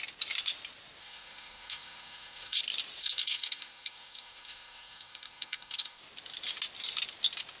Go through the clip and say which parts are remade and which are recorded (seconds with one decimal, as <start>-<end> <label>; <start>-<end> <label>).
0.0-1.0 recorded; 1.0-2.6 remade; 2.6-3.0 recorded; 3.0-6.0 remade; 6.0-7.6 recorded